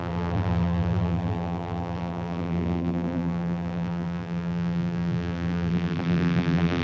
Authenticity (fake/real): fake